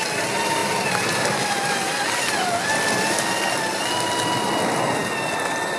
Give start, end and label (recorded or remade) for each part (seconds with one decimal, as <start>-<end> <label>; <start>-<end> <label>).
0.0-5.8 recorded